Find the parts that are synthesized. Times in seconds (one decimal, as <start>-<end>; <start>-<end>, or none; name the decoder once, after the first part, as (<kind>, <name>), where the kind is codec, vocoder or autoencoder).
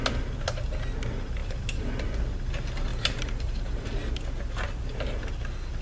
1.4-1.9 (vocoder, BigVGAN v2); 2.9-3.9